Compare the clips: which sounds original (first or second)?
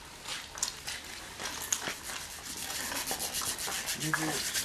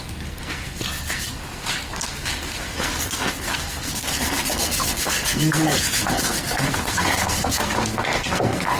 first